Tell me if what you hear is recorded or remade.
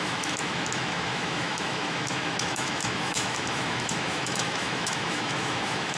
remade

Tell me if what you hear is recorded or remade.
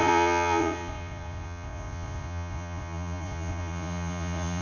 remade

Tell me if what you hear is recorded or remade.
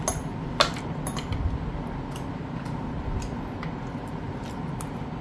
recorded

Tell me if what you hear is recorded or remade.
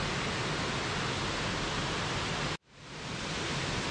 recorded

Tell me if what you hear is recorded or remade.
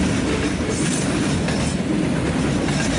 recorded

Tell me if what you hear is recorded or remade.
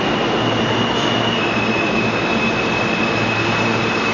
recorded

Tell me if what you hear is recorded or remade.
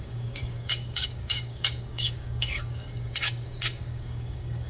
remade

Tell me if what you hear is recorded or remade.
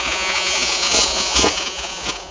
remade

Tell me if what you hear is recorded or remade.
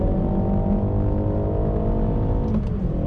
recorded